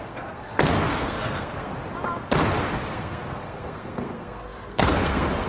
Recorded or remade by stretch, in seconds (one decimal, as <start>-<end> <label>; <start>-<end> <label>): 0.0-1.7 remade; 1.7-2.9 recorded; 2.9-5.5 remade

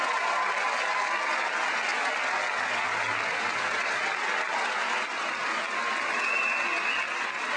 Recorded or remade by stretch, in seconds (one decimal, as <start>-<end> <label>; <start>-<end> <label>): 0.0-7.6 recorded

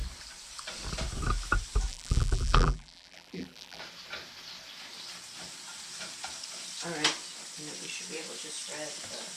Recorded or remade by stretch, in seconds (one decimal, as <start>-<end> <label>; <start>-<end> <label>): 0.0-1.9 recorded; 1.9-3.8 remade; 3.8-9.4 recorded

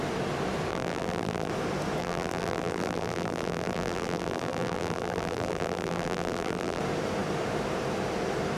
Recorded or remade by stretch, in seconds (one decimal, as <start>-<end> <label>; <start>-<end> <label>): 0.0-0.7 recorded; 0.7-1.5 remade; 1.5-2.0 recorded; 2.0-6.8 remade; 6.8-8.6 recorded

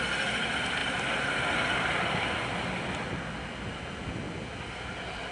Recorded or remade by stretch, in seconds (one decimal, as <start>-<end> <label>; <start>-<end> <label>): 0.0-5.3 recorded